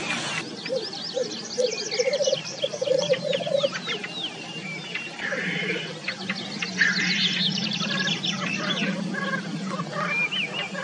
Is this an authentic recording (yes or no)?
yes